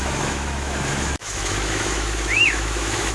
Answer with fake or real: fake